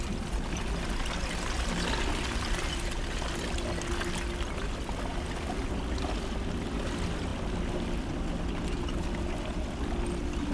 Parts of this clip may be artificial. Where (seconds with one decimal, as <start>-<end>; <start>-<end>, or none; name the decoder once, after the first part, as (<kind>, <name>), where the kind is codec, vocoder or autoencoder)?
none